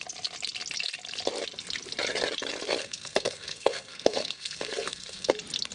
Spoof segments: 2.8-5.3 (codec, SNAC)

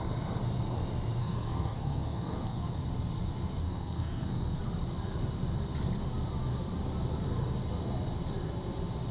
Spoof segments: 1.2-2.7 (codec, SNAC); 3.6-4.6

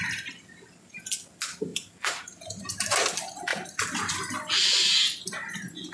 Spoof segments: 1.7-2.6 (vocoder, BigVGAN v2); 3.5-4.1

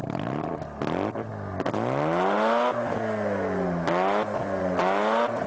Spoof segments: none

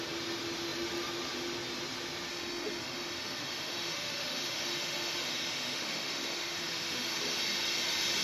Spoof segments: 2.3-7.2 (autoencoder, DAC-VAE)

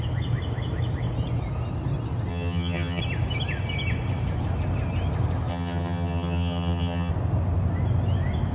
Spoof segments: 2.3-3.0 (vocoder, HiFi-GAN); 5.5-7.1